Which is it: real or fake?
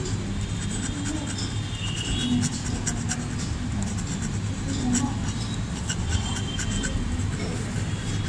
real